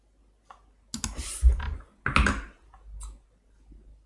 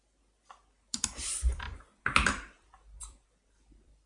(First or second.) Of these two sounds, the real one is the first